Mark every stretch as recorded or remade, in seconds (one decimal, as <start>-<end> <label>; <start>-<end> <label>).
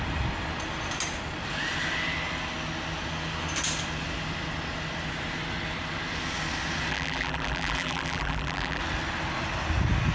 0.0-6.9 recorded; 6.9-8.8 remade; 8.8-10.1 recorded